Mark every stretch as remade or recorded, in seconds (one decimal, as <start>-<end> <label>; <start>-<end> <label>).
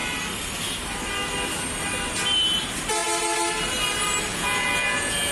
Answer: 0.0-4.3 recorded; 4.3-5.3 remade